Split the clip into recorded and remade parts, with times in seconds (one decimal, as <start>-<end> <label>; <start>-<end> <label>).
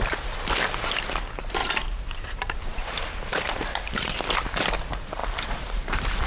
0.0-1.6 recorded; 1.6-4.1 remade; 4.1-5.2 recorded; 5.2-6.3 remade